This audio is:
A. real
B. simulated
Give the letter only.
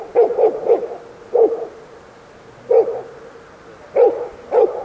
A